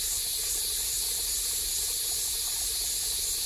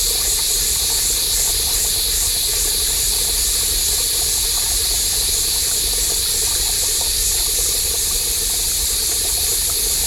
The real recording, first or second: first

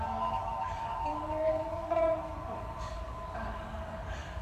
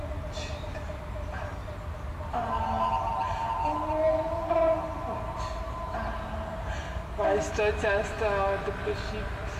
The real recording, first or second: second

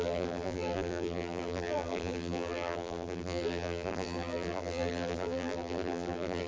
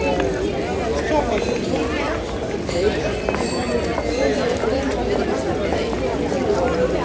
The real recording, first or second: second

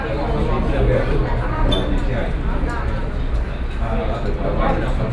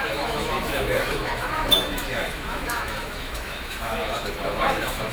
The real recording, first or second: first